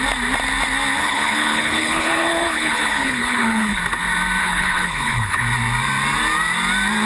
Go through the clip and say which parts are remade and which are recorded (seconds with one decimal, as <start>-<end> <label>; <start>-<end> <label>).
0.0-1.0 recorded; 1.0-3.8 remade; 3.8-4.4 recorded; 4.4-5.4 remade; 5.4-7.1 recorded